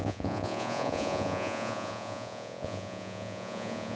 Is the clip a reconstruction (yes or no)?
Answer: yes